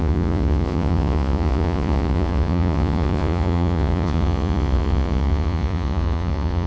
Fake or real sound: fake